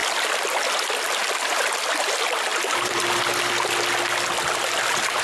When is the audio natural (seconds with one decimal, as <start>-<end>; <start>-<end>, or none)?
0.0-2.5; 3.1-5.2